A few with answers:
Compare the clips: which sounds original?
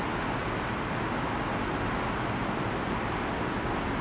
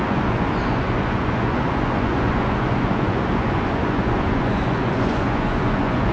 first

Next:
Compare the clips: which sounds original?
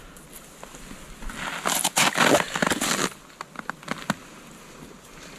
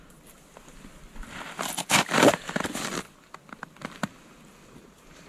first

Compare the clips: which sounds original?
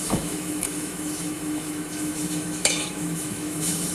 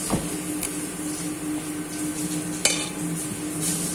second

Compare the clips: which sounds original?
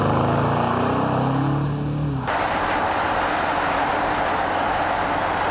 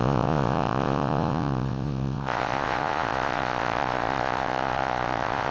first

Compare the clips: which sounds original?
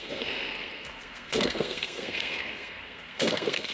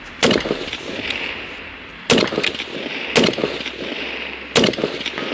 second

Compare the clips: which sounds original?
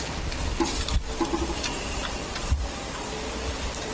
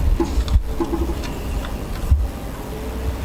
second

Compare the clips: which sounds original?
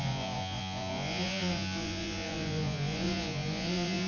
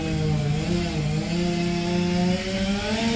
second